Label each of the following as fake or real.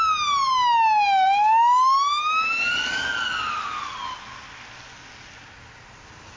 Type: real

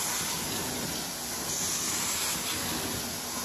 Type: real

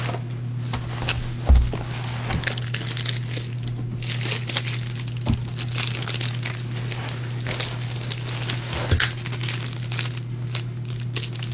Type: real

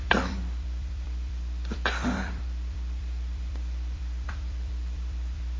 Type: fake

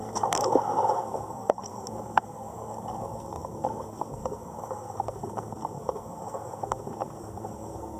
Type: fake